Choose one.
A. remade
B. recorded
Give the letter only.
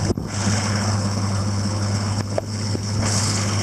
A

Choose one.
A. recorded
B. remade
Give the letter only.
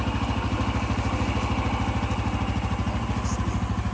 A